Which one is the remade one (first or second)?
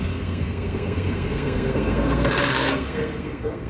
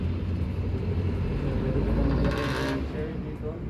first